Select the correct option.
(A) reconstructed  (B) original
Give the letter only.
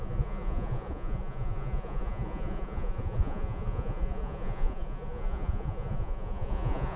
A